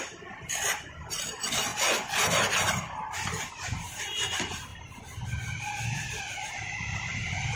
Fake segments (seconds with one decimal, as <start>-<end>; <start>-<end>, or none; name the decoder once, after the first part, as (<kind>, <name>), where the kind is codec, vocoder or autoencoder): 0.0-1.7 (vocoder, BigVGAN v2); 3.5-4.7; 6.2-7.6